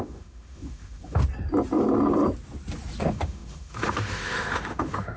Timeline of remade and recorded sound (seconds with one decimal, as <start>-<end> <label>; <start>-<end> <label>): 0.0-1.2 remade; 1.2-3.0 recorded; 3.0-5.2 remade